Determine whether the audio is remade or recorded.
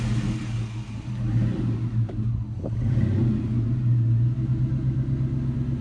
recorded